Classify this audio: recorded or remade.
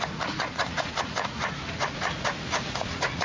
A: remade